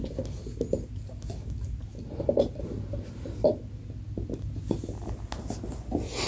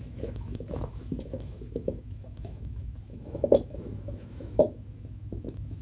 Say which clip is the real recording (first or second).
first